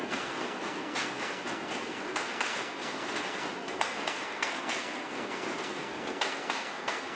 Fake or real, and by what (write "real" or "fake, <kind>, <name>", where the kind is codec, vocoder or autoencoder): fake, codec, SNAC